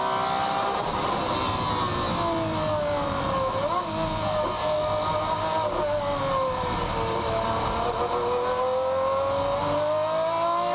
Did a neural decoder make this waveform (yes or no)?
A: no